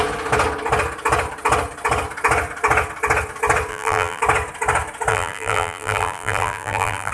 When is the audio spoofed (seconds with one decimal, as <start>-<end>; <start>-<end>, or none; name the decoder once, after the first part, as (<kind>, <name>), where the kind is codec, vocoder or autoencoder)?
3.7-4.2 (vocoder, BigVGAN v2); 5.1-7.1